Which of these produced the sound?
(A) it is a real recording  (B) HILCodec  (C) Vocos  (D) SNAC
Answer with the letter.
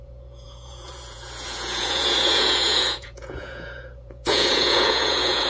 C